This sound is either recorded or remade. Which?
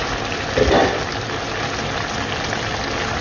recorded